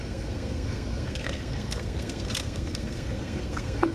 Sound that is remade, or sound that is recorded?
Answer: remade